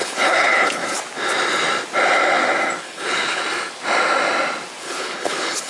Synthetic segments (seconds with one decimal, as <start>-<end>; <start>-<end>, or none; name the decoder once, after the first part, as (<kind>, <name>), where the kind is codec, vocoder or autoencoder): 0.0-0.8 (codec, HILCodec); 2.8-3.4; 4.8-5.7

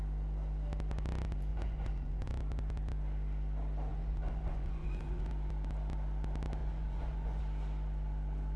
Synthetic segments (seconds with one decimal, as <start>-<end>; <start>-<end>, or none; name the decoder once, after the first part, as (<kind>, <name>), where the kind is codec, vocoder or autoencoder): 1.5-2.3 (vocoder, Vocos); 3.9-5.3; 6.6-7.4

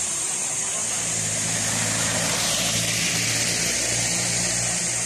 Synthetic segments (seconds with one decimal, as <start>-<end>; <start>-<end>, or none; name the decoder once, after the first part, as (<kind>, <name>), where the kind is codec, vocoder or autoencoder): none